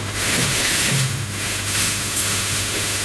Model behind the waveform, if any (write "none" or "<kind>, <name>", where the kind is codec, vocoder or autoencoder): autoencoder, DAC-VAE